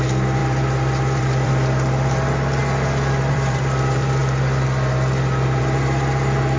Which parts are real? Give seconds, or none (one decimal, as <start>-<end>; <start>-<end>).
2.6-3.3; 4.2-5.6